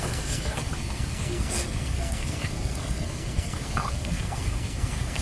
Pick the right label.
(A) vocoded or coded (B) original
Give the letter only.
A